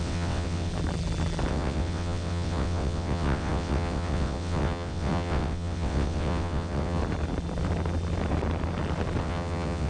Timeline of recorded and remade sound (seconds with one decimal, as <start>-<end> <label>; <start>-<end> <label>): 0.0-0.7 remade; 0.7-1.5 recorded; 1.5-7.0 remade; 7.0-9.2 recorded; 9.2-9.9 remade